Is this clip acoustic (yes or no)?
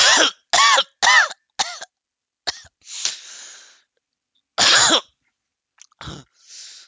yes